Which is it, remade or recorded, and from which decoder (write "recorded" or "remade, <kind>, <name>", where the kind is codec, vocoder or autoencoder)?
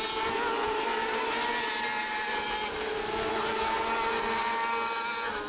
recorded